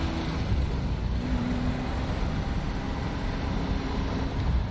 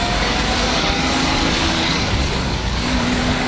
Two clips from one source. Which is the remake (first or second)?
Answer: second